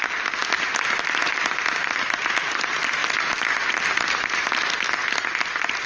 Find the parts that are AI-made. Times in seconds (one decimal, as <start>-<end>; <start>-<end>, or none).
none